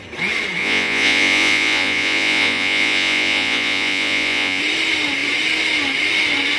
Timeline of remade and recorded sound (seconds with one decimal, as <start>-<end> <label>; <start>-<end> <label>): 0.0-0.6 recorded; 0.6-4.6 remade; 4.6-6.6 recorded